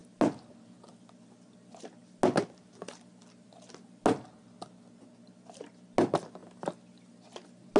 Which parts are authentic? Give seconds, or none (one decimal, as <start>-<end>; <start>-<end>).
0.0-7.8